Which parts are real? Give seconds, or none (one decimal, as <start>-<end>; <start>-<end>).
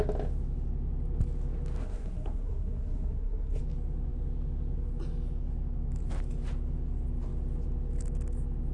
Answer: 0.0-1.8; 3.6-8.7